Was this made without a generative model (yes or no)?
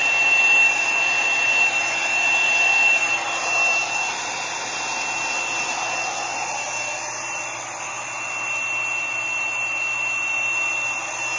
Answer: yes